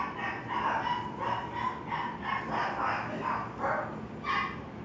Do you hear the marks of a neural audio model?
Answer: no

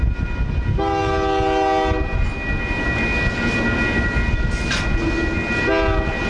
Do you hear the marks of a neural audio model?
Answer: no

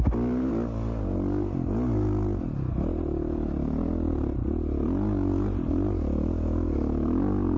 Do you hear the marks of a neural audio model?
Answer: no